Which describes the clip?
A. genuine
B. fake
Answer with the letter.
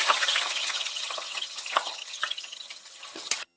B